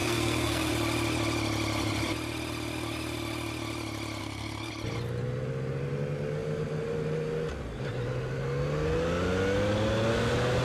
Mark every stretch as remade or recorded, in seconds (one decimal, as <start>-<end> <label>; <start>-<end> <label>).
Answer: 0.0-0.7 remade; 0.7-4.2 recorded; 4.2-4.7 remade; 4.7-10.6 recorded